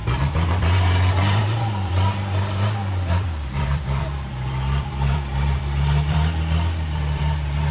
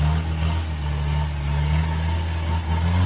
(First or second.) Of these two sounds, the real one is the second